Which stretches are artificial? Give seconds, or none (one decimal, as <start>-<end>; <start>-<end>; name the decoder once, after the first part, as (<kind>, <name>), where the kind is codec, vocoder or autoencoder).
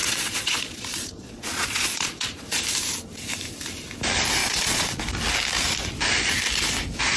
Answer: 0.0-2.6 (vocoder, Vocos); 4.4-5.0